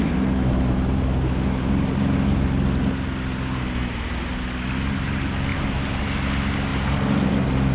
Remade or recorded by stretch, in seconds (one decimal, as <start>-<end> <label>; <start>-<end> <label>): 0.0-5.5 recorded; 5.5-6.0 remade; 6.0-7.7 recorded